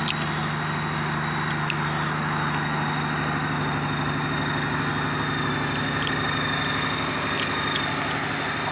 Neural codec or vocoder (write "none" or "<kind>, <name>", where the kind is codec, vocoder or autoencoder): none